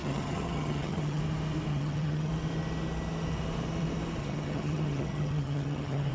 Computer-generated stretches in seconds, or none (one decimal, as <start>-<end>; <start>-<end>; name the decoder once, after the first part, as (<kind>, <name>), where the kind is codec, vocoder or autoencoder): 0.0-1.2 (vocoder, HiFi-GAN); 1.7-2.3; 4.2-6.1